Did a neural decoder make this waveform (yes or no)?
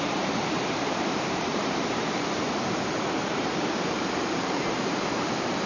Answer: yes